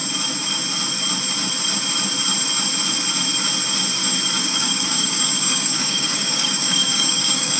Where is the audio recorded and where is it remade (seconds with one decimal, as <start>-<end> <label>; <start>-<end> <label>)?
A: 0.0-4.4 recorded; 4.4-7.6 remade